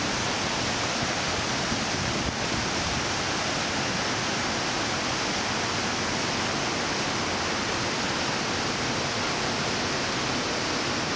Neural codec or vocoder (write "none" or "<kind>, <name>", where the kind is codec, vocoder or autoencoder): none